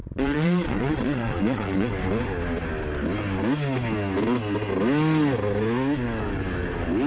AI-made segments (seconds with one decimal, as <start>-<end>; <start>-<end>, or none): 0.0-1.9